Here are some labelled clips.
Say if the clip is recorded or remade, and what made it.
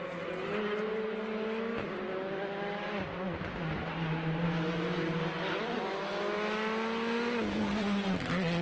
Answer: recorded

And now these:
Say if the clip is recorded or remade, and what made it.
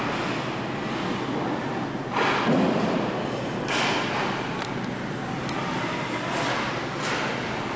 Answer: recorded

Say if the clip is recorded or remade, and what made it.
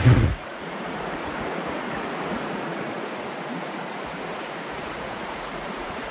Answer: remade, vocoder, Vocos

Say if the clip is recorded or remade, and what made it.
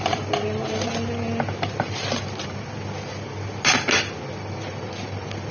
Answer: recorded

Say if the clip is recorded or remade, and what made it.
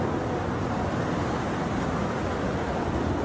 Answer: recorded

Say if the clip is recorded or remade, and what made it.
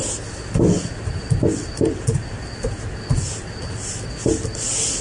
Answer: recorded